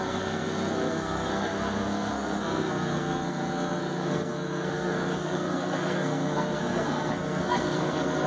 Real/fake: fake